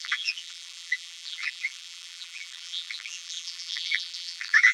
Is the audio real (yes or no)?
no